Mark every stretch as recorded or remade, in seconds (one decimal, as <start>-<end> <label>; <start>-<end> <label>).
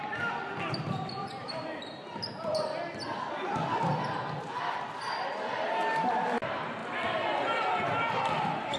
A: 0.0-8.8 recorded